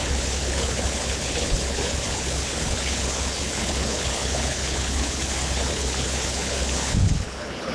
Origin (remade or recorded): remade